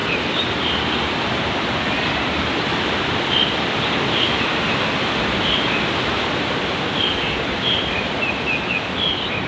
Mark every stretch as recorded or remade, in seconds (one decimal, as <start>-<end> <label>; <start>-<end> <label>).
0.0-4.2 remade; 4.2-9.5 recorded